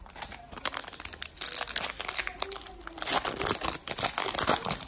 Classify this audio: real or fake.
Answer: real